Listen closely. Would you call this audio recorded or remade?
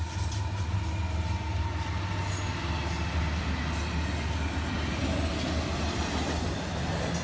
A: recorded